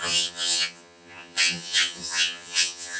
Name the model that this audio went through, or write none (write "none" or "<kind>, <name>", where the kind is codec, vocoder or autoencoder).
vocoder, HiFi-GAN